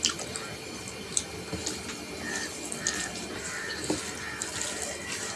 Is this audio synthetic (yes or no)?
no